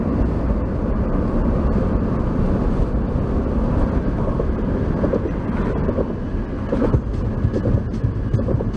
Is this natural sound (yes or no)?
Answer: yes